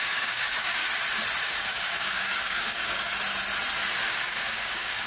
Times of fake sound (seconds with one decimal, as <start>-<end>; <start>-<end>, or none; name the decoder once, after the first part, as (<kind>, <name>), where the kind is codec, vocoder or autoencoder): 0.0-0.8 (codec, DAC); 1.4-3.1; 4.1-5.1